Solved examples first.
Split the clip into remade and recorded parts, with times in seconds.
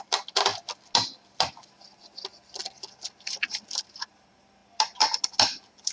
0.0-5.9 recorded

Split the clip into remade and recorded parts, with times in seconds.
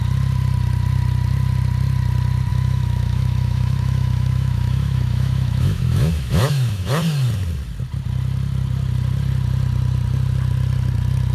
0.0-2.5 recorded; 2.5-6.9 remade; 6.9-11.3 recorded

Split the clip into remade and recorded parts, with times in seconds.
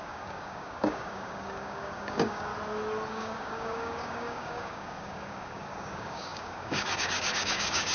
0.0-2.5 remade; 2.5-3.1 recorded; 3.1-7.9 remade